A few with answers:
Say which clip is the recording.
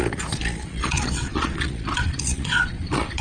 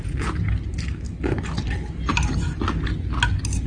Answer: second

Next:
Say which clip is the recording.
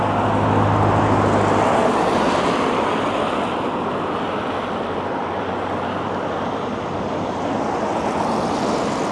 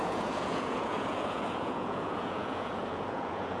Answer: first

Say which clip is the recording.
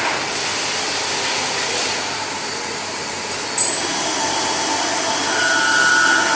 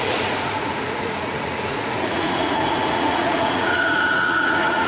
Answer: first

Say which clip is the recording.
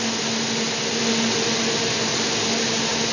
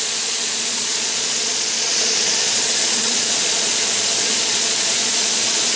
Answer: first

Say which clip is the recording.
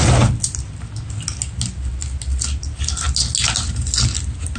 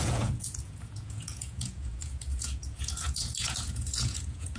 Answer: first